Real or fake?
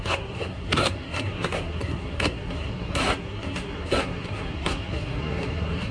fake